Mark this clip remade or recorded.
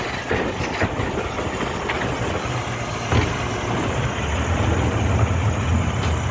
recorded